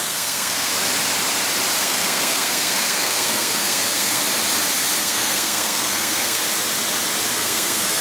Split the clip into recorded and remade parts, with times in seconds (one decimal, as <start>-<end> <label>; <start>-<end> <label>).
0.0-0.7 remade; 0.7-1.8 recorded; 1.8-4.2 remade; 4.2-5.0 recorded; 5.0-6.4 remade; 6.4-7.3 recorded; 7.3-8.0 remade